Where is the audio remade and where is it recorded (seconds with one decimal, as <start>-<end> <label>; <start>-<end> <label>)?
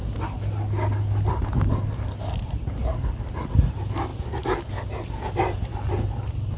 0.0-6.6 recorded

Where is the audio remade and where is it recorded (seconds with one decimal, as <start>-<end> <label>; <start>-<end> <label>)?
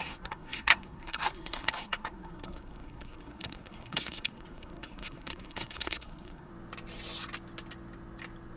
0.0-6.5 remade; 6.5-8.6 recorded